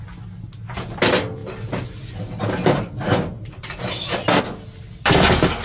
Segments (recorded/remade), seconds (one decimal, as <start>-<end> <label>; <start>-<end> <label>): 0.0-5.6 recorded

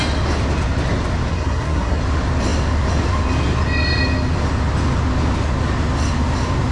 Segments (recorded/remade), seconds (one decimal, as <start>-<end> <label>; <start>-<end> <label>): 0.0-1.3 recorded; 1.3-2.0 remade; 2.0-6.7 recorded

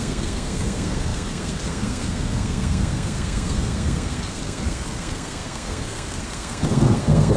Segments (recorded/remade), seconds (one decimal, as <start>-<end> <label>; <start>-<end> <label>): 0.0-7.4 remade

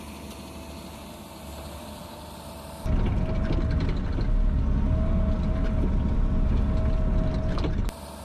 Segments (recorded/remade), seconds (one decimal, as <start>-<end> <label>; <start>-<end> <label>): 0.0-8.2 recorded

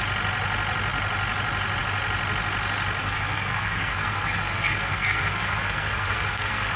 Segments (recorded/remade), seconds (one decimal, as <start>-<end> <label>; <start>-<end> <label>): 0.0-3.0 recorded; 3.0-6.8 remade

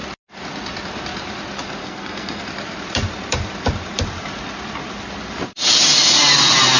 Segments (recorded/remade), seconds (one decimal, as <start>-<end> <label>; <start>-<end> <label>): 0.0-1.8 recorded; 1.8-2.4 remade; 2.4-6.8 recorded

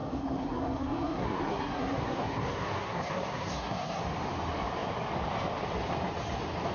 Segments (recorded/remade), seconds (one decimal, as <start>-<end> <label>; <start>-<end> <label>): 0.0-4.0 remade; 4.0-6.7 recorded

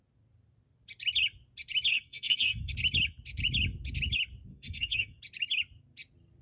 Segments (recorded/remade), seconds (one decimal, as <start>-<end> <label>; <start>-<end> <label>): 0.0-1.9 recorded; 1.9-2.7 remade; 2.7-4.5 recorded; 4.5-5.2 remade; 5.2-6.4 recorded